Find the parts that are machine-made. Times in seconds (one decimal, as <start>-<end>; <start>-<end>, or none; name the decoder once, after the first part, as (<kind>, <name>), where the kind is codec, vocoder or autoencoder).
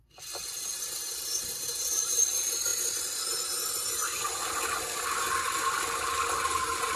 none